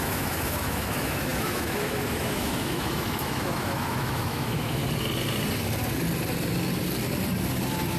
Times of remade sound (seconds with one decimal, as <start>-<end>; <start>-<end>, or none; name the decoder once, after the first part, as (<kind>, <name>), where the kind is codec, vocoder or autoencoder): 0.0-4.8 (autoencoder, DAC-VAE)